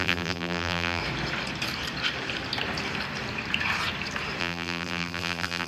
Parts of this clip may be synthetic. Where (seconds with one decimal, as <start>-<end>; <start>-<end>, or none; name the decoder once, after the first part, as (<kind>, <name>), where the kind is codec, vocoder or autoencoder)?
0.0-1.0 (vocoder, BigVGAN v2); 4.4-5.7